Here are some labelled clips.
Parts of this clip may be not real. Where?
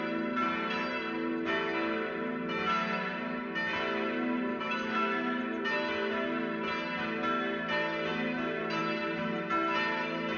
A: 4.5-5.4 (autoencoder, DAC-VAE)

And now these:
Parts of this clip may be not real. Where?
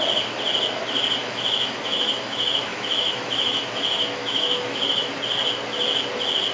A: 1.2-5.1 (autoencoder, DAC-VAE)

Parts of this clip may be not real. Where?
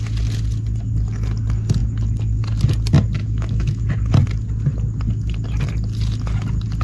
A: 3.2-3.8 (autoencoder, DAC-VAE)